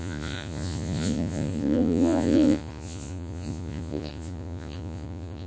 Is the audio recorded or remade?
remade